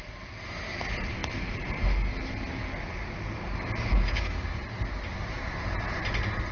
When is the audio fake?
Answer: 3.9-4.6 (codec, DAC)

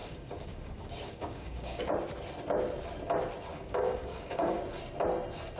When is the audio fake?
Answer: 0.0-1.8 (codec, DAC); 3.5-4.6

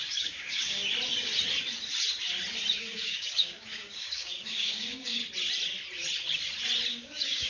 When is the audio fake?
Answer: 0.0-0.8 (codec, DAC); 2.8-5.2; 6.9-7.5

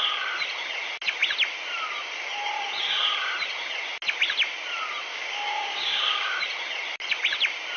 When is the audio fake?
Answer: 5.1-6.4 (codec, DAC)

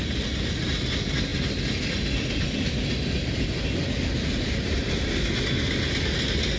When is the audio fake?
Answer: none

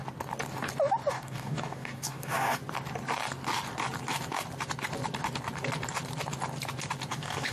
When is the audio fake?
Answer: 1.1-2.6 (codec, DAC); 7.1-7.5

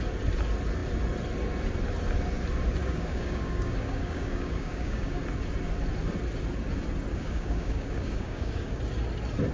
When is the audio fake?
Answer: 2.8-5.2 (codec, DAC); 7.1-8.8